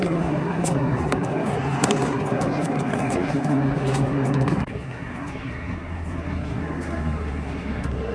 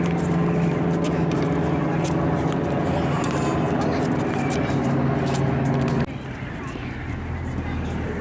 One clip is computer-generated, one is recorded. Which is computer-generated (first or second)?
first